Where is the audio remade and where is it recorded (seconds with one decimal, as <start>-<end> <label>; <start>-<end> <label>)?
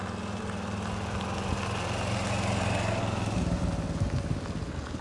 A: 0.0-5.0 recorded